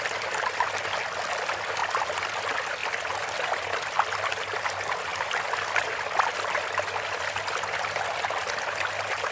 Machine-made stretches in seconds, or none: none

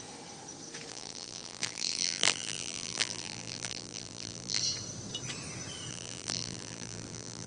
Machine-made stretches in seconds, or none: 0.9-4.6 (vocoder, BigVGAN v2); 5.9-7.5

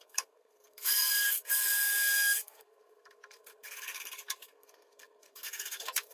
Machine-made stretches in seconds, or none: 0.0-6.1 (codec, SNAC)

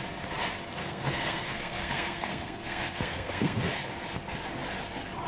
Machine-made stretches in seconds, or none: 0.7-3.9 (codec, SNAC)

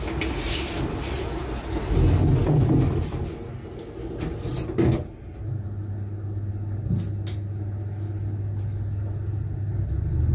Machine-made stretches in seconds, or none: none

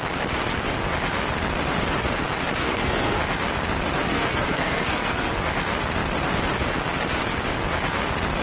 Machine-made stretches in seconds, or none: 2.6-3.2 (codec, SNAC); 4.0-5.3

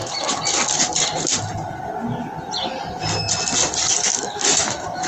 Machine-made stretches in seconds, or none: 3.9-5.1 (autoencoder, DAC-VAE)